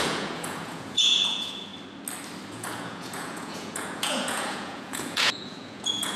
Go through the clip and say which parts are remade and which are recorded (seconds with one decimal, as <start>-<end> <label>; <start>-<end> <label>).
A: 0.0-1.7 remade; 1.7-2.5 recorded; 2.5-6.2 remade